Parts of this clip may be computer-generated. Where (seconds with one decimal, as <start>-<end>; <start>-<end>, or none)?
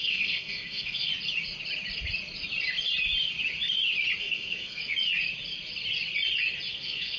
0.0-1.1; 4.2-4.8; 6.7-7.2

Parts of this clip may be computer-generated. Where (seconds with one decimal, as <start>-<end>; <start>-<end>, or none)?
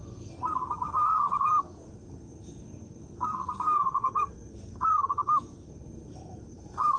0.0-7.0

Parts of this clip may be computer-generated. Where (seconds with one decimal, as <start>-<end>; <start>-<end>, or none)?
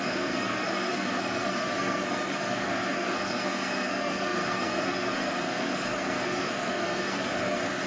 0.0-7.9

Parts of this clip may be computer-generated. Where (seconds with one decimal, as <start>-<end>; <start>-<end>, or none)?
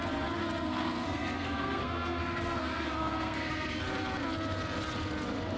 0.4-3.8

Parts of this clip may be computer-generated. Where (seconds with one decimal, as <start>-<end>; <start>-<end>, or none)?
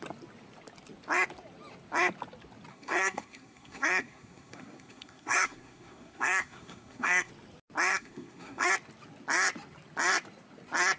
2.7-7.3; 7.9-8.7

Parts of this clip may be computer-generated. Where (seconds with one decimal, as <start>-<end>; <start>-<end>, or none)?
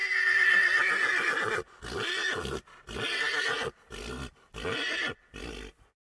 none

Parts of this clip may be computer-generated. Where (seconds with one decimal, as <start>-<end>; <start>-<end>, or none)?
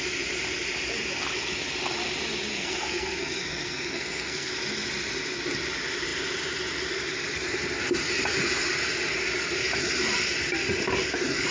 2.5-4.5